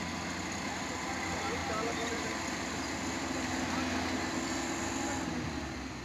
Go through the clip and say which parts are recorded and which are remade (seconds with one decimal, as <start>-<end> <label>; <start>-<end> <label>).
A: 0.0-6.0 recorded